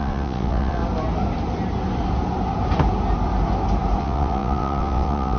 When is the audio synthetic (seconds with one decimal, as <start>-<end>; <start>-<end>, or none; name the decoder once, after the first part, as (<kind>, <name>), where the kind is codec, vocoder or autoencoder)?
0.0-0.8 (vocoder, WaveNeXt); 4.0-5.4